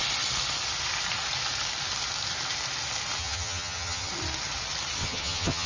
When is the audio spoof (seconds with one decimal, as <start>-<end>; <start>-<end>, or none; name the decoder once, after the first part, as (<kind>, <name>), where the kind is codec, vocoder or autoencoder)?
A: 3.2-4.1 (vocoder, HiFi-GAN); 5.0-5.7